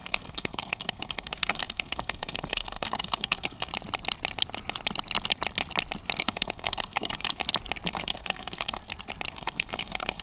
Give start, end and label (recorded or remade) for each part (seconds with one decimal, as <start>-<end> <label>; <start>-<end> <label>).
0.0-3.7 remade; 3.7-6.2 recorded; 6.2-7.4 remade; 7.4-7.9 recorded; 7.9-8.8 remade; 8.8-9.3 recorded; 9.3-10.2 remade